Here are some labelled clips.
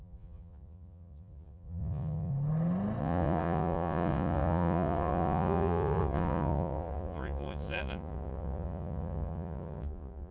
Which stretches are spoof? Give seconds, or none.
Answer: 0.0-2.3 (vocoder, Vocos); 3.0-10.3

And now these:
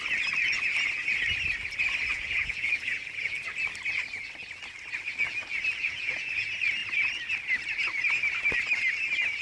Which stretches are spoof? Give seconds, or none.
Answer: 2.1-3.4 (vocoder, Vocos); 5.8-6.3

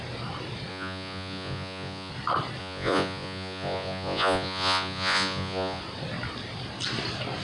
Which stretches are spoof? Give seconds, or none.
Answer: 0.7-2.1 (vocoder, Vocos); 2.6-5.8

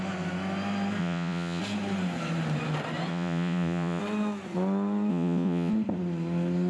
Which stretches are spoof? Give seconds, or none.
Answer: 1.0-1.6 (vocoder, Vocos); 3.1-4.0; 5.1-5.7

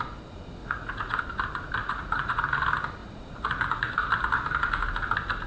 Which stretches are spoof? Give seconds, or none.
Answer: 0.6-1.2 (vocoder, Vocos); 1.8-2.4; 3.0-3.9

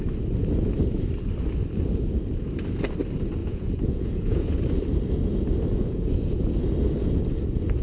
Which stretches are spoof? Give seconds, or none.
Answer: 3.4-4.6 (vocoder, Vocos); 5.7-6.3